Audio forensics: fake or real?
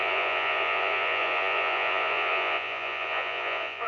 fake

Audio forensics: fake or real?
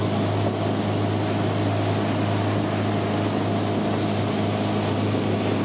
real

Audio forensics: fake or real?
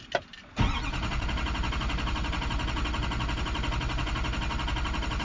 real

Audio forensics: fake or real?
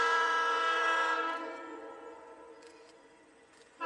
fake